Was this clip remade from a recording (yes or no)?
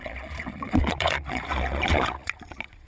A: yes